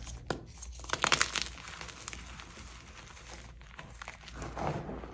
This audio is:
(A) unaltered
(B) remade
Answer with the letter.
A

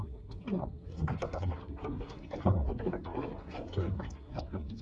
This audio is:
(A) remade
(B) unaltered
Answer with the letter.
A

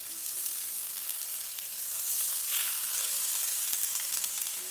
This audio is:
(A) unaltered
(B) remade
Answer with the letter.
B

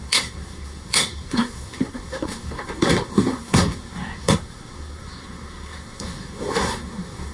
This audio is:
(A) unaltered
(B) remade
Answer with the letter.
B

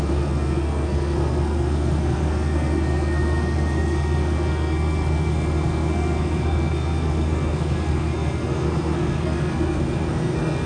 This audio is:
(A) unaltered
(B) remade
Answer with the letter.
B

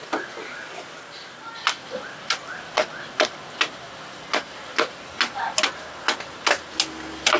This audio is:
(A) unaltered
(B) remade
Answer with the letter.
A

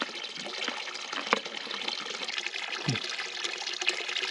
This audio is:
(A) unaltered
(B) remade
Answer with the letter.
A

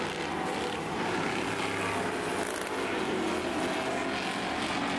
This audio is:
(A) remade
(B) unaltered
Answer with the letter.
B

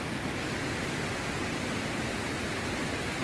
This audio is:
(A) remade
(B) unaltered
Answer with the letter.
B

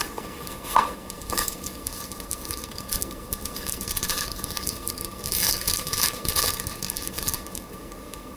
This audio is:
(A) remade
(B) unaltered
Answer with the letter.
A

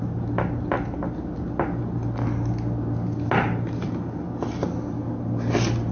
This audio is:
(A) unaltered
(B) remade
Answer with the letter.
A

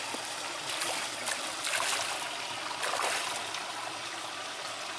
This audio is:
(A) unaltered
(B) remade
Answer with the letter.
A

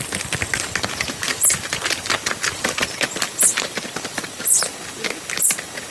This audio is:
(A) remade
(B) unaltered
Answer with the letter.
B